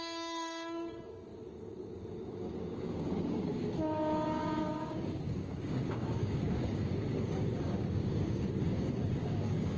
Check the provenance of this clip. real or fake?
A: fake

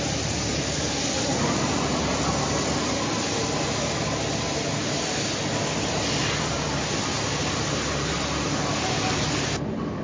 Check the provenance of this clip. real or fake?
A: real